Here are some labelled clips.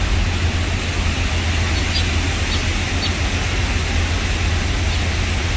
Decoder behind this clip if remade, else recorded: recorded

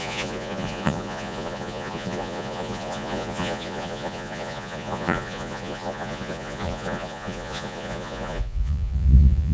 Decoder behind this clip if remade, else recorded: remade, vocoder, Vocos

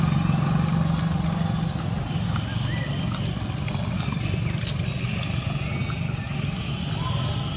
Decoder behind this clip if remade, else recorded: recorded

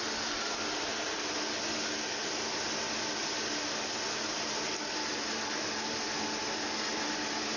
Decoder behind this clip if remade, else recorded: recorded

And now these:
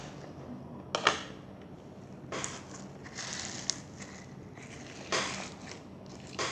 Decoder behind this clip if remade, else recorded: recorded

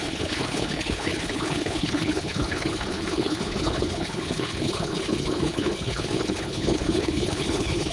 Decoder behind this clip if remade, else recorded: remade, codec, HILCodec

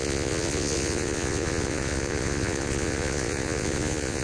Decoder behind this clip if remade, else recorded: remade, vocoder, Vocos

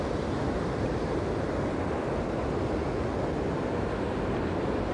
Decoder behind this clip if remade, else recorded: recorded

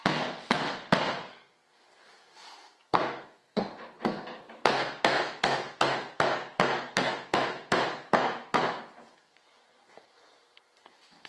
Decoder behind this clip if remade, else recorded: remade, codec, SNAC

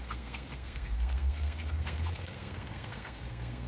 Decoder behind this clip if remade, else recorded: remade, codec, SNAC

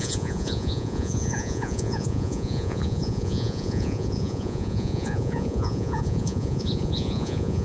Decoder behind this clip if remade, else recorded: remade, vocoder, Vocos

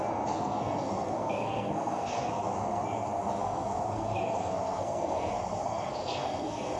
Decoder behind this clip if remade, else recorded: remade, codec, SNAC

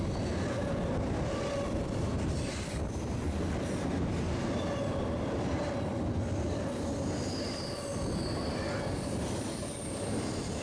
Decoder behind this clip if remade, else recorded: recorded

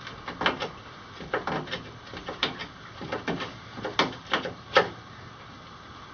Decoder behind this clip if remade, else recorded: recorded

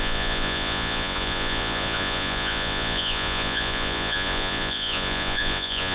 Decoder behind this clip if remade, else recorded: remade, vocoder, Vocos